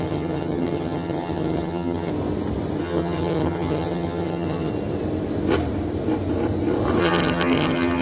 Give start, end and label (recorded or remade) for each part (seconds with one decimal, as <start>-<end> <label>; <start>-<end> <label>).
0.0-2.1 remade; 2.1-2.8 recorded; 2.8-4.7 remade; 4.7-7.0 recorded; 7.0-8.0 remade